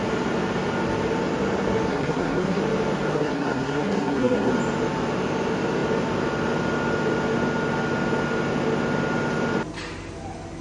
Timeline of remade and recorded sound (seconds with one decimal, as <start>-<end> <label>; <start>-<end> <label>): 0.0-1.9 recorded; 1.9-2.6 remade; 2.6-3.1 recorded; 3.1-4.5 remade; 4.5-10.6 recorded